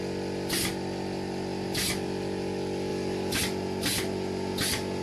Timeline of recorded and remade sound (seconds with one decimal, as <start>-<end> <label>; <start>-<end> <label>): 0.0-2.9 recorded; 2.9-3.4 remade; 3.4-5.0 recorded